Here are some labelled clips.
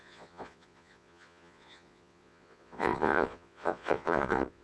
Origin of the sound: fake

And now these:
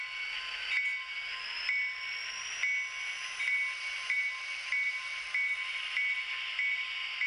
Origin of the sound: real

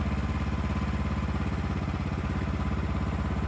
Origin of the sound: real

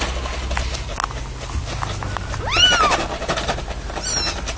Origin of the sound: real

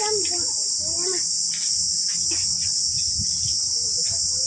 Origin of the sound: real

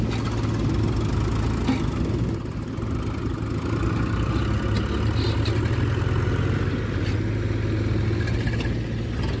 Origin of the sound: real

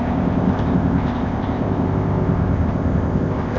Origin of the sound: fake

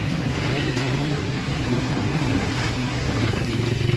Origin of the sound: fake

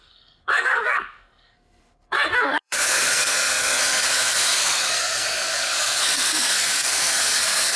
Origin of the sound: fake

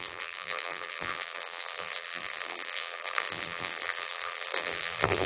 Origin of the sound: fake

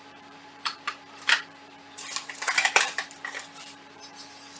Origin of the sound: fake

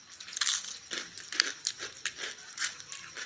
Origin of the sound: real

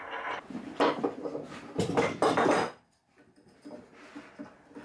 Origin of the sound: real